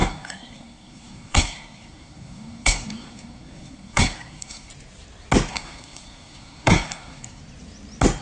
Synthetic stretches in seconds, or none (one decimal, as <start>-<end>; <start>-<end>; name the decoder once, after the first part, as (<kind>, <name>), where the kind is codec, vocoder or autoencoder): 0.0-4.7 (codec, SNAC); 5.5-7.4